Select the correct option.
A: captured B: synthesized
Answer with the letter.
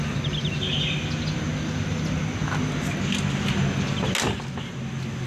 A